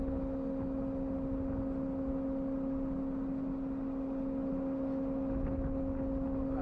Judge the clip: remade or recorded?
recorded